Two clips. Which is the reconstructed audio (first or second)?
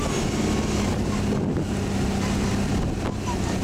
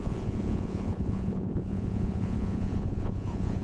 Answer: second